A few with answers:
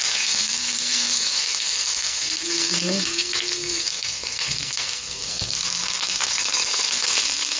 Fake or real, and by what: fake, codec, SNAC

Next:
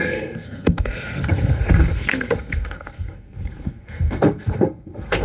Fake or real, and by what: fake, codec, SNAC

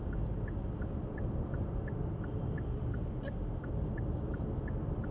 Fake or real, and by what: real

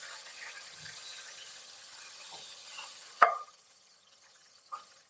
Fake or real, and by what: fake, vocoder, HiFi-GAN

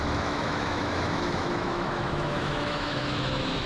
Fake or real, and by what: fake, autoencoder, DAC-VAE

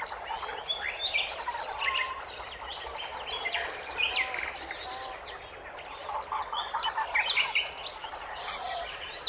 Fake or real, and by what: real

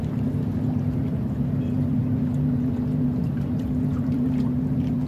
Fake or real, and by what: fake, vocoder, BigVGAN v2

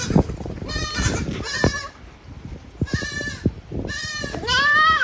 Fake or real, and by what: real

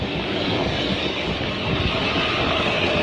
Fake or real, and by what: fake, codec, DAC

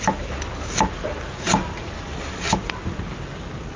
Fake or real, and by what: real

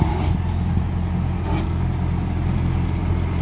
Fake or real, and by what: real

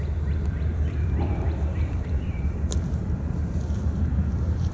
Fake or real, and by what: fake, vocoder, BigVGAN v2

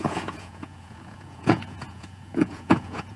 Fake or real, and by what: fake, vocoder, Vocos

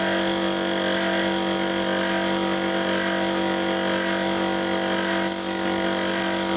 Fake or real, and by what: real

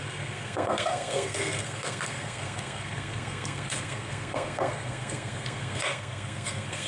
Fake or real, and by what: fake, codec, SNAC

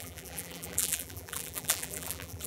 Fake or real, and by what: fake, vocoder, BigVGAN v2